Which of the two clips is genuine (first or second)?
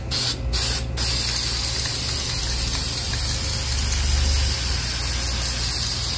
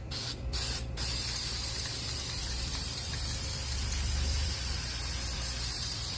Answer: first